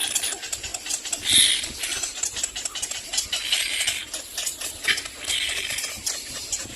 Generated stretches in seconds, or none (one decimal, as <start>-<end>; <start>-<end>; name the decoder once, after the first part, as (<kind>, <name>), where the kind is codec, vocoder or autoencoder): 4.4-5.8 (vocoder, BigVGAN v2)